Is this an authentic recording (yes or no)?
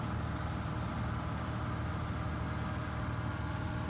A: yes